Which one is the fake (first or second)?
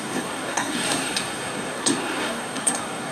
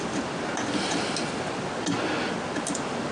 first